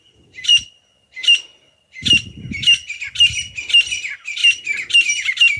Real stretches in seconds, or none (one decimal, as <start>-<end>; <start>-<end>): 0.5-1.1; 1.5-3.7